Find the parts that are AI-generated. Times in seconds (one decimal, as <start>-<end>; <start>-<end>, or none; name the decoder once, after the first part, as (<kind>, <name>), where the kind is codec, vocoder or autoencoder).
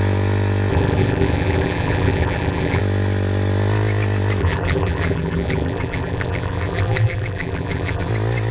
0.7-2.8 (vocoder, BigVGAN v2); 4.4-8.1